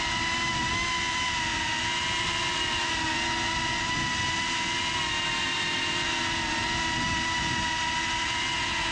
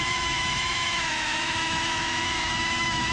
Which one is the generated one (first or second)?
second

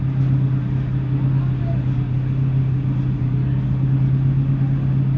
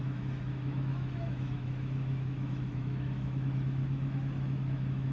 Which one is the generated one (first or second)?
second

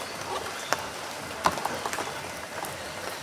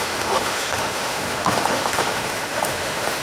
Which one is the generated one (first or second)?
second